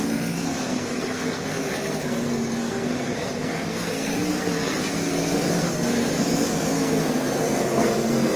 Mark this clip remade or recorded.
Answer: remade